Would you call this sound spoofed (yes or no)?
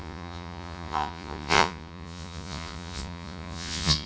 yes